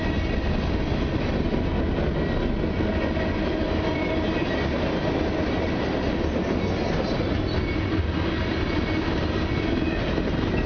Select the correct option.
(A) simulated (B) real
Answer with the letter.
B